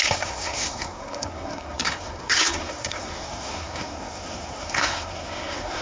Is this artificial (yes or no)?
yes